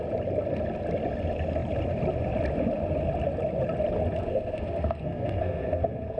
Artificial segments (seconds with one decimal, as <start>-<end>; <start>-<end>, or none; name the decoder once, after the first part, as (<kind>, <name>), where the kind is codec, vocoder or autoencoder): 4.2-6.2 (codec, SNAC)